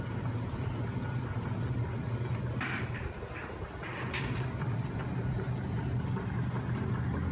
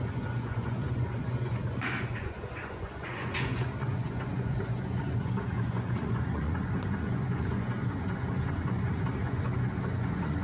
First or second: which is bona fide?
first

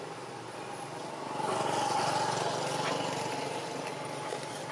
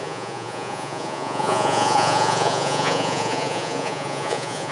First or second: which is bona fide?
first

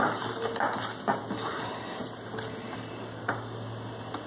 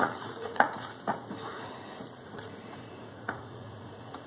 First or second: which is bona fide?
first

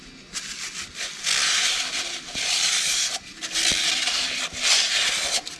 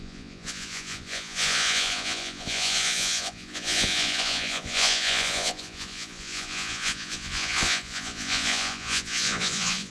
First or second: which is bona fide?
first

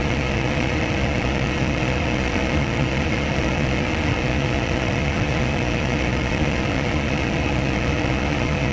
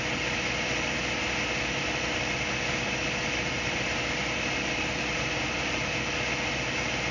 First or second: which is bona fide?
second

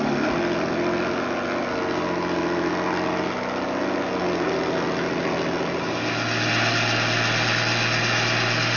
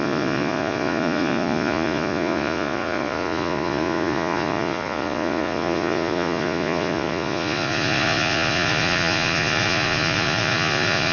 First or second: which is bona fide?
first